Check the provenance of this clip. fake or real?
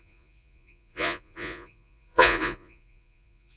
fake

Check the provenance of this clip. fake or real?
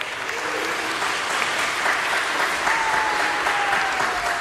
real